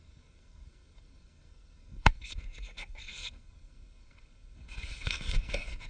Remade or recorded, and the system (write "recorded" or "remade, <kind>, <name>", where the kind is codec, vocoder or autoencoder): remade, codec, SNAC